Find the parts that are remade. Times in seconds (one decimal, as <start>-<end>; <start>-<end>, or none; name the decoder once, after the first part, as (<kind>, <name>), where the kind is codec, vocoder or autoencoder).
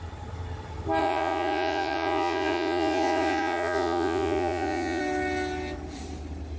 1.0-5.0 (vocoder, Vocos)